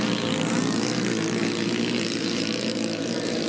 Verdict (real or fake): fake